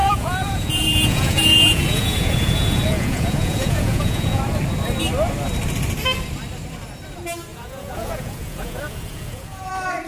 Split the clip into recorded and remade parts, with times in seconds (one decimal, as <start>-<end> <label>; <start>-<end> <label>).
0.0-4.4 remade; 4.4-7.5 recorded; 7.5-9.7 remade; 9.7-10.1 recorded